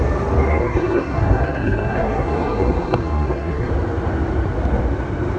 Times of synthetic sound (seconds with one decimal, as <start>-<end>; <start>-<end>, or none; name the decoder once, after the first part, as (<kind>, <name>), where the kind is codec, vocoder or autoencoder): 0.5-3.7 (codec, SNAC)